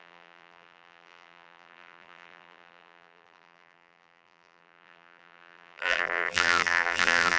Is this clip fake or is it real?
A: fake